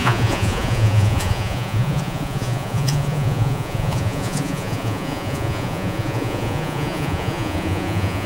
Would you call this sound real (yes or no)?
no